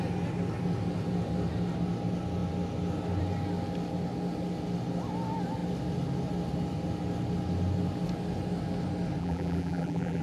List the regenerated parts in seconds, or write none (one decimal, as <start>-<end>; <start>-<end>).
9.2-10.2